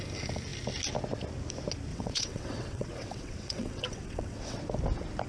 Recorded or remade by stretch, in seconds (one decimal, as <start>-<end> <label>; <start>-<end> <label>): 0.0-1.9 recorded; 1.9-4.6 remade; 4.6-5.3 recorded